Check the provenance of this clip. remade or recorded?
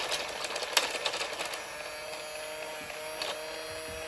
recorded